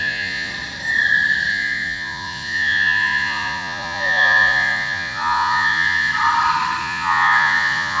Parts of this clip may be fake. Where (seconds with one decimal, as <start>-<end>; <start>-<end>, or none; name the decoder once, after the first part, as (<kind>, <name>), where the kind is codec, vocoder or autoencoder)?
0.0-0.5 (vocoder, Vocos); 1.5-6.1; 6.8-8.0